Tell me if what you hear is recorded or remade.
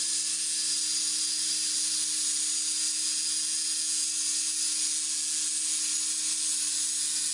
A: recorded